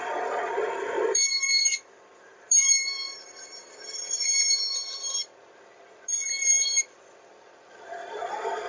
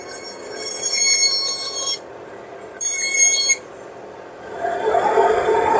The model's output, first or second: first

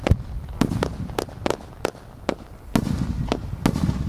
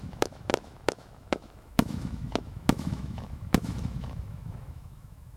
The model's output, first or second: second